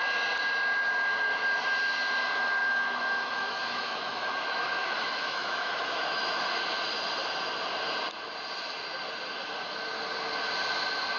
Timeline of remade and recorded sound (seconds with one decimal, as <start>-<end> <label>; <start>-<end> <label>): 0.0-2.6 recorded; 2.6-6.4 remade; 6.4-11.2 recorded